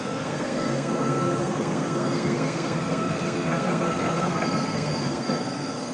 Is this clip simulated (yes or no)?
yes